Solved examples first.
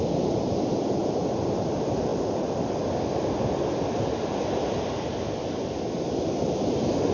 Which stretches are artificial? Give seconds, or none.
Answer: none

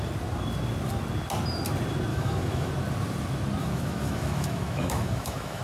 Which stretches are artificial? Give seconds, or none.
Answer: 2.1-2.7 (autoencoder, DAC-VAE); 3.6-5.6